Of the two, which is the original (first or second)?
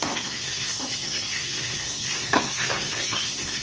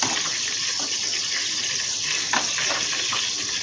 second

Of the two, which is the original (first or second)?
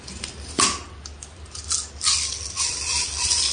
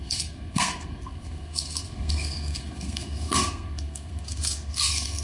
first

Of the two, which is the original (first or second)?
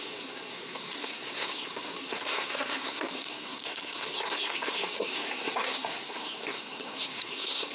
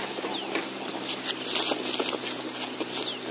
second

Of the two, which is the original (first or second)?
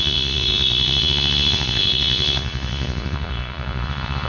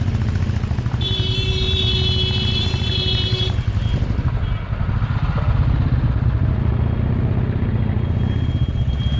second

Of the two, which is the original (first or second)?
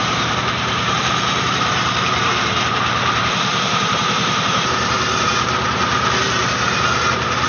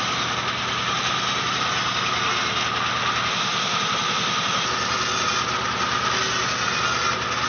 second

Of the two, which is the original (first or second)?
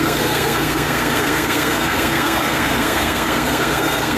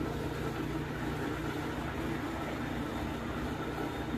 second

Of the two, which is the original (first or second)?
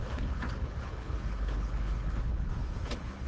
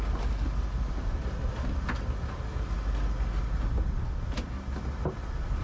second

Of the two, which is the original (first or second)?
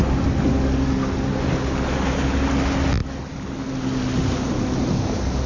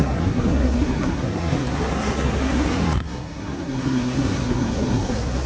first